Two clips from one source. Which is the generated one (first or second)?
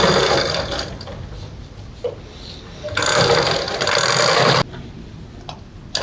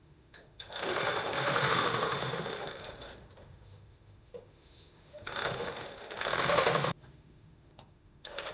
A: second